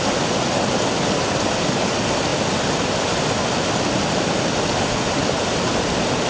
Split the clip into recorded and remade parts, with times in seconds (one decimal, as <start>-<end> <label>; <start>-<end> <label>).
0.0-6.3 recorded

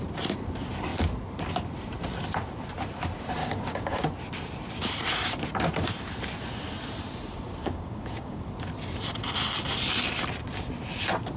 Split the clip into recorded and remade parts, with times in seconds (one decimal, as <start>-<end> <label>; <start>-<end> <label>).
0.0-3.4 recorded; 3.4-4.0 remade; 4.0-7.6 recorded; 7.6-8.4 remade; 8.4-11.4 recorded

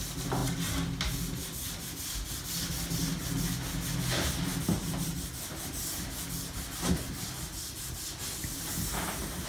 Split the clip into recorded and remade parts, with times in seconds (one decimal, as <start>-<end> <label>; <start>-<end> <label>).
0.0-9.5 recorded

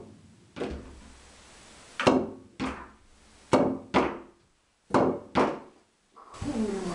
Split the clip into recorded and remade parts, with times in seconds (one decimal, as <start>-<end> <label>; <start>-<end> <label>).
0.0-6.9 recorded

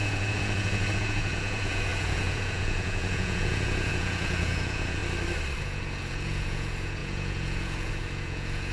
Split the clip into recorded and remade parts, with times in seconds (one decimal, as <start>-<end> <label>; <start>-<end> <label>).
0.0-5.0 remade; 5.0-5.6 recorded; 5.6-8.7 remade

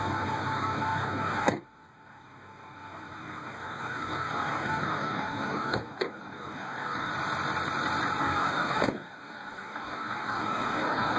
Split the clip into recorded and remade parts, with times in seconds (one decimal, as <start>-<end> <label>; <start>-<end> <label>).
0.0-7.1 remade; 7.1-8.2 recorded; 8.2-11.2 remade

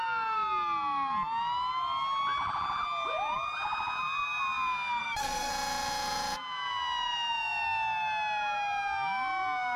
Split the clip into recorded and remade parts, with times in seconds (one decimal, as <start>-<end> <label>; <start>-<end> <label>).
0.0-5.0 recorded; 5.0-5.5 remade; 5.5-9.8 recorded